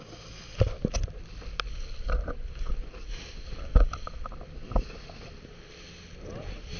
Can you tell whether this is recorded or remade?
recorded